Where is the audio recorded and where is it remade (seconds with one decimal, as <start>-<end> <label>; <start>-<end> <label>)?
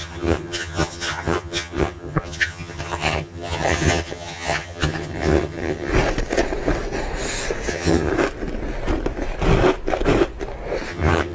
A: 0.0-5.9 remade; 5.9-7.7 recorded; 7.7-8.1 remade; 8.1-10.9 recorded; 10.9-11.3 remade